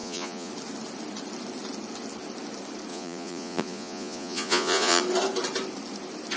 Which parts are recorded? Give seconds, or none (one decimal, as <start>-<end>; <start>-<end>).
0.5-2.9; 5.0-6.4